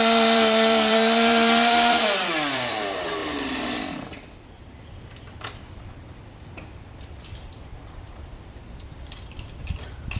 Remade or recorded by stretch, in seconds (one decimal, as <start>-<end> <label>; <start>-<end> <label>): 0.0-10.2 remade